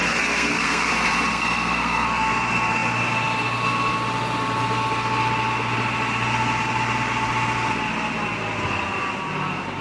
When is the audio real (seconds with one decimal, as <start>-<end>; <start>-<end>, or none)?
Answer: 0.9-1.3; 2.3-9.8